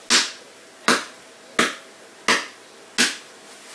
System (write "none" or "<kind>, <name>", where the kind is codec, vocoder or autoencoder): none